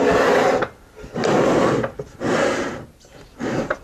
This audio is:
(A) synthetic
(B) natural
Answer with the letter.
B